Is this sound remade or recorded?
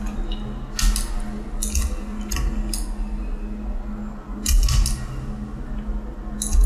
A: recorded